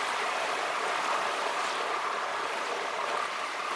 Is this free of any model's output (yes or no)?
no